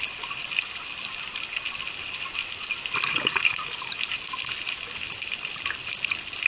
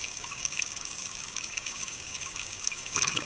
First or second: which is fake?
second